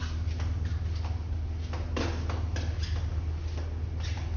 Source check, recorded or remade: recorded